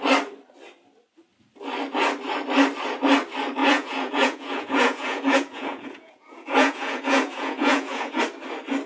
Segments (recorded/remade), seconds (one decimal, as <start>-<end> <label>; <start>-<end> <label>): 0.0-3.6 recorded; 3.6-8.2 remade; 8.2-8.9 recorded